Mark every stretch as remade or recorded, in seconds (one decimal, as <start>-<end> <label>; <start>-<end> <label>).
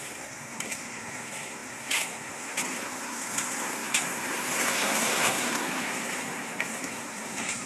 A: 0.0-7.7 remade